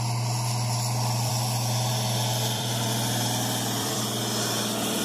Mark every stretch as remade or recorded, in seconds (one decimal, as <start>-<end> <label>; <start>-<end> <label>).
0.0-1.3 recorded; 1.3-4.2 remade; 4.2-5.0 recorded